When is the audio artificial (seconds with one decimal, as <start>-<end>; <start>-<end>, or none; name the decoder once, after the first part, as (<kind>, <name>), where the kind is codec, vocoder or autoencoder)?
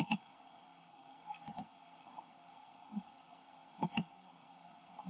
0.0-5.1 (codec, SNAC)